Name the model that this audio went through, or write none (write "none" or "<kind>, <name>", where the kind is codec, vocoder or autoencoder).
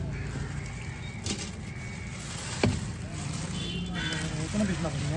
none